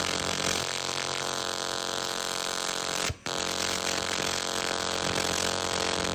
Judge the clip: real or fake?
real